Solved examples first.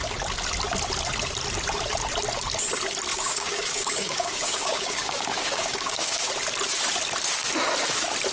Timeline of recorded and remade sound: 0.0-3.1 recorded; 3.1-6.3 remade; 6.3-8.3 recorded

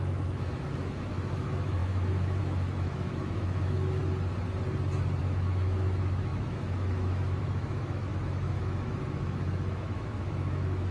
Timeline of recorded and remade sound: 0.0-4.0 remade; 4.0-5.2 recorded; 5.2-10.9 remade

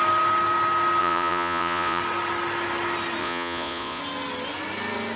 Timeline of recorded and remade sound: 0.0-1.0 recorded; 1.0-2.0 remade; 2.0-3.2 recorded; 3.2-4.0 remade; 4.0-5.2 recorded

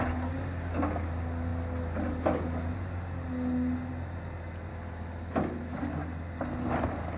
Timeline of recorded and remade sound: 0.0-4.7 recorded; 4.7-5.8 remade; 5.8-7.2 recorded

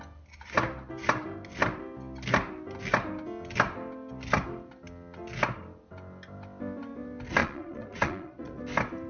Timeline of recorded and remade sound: 0.0-7.4 recorded; 7.4-8.6 remade; 8.6-9.1 recorded